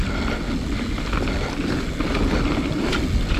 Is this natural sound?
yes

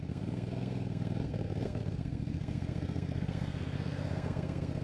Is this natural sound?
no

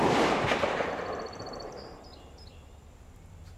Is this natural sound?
yes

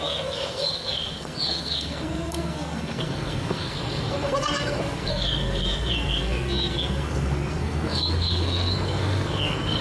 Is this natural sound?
no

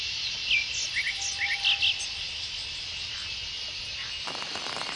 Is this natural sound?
yes